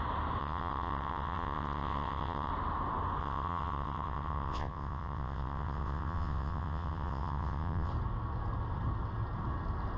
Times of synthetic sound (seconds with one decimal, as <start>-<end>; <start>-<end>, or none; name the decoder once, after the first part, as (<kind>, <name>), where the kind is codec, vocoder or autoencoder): 0.4-2.5 (vocoder, WaveNeXt); 3.2-7.9